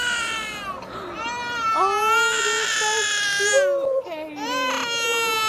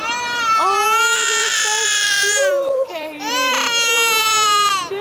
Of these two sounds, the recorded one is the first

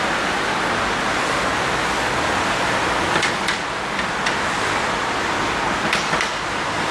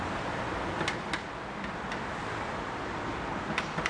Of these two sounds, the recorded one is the first